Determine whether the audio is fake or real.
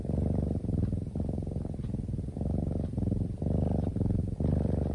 real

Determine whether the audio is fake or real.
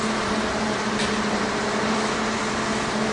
real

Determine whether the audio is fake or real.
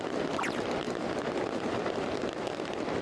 real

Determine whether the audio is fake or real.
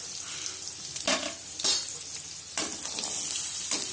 real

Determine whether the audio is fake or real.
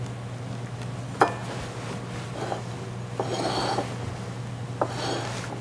real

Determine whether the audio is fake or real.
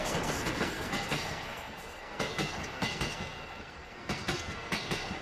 fake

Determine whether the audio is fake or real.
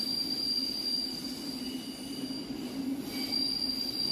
real